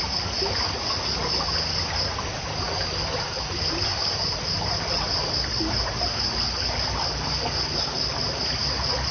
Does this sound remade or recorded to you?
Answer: recorded